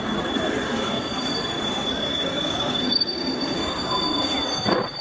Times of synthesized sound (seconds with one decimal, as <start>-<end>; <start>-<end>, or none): 2.1-3.9